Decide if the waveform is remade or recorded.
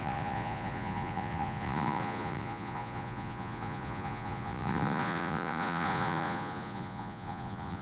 remade